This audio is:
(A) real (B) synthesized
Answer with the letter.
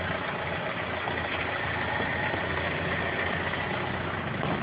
A